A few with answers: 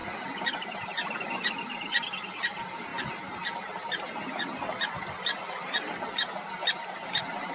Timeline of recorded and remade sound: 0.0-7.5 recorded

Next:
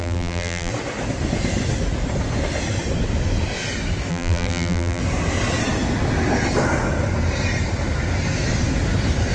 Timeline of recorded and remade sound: 0.0-0.7 remade; 0.7-4.1 recorded; 4.1-5.0 remade; 5.0-9.3 recorded